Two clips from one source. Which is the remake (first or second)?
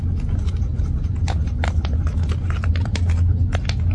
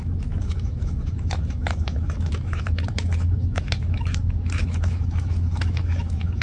second